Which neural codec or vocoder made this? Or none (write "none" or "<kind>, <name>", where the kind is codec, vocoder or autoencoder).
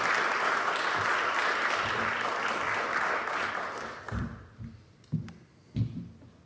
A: none